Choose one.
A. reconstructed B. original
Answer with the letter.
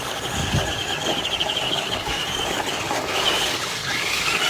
A